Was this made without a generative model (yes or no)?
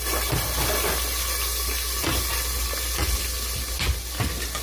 yes